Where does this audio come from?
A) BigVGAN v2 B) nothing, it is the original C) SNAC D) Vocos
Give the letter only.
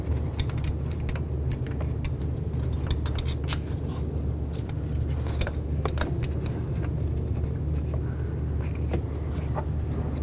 B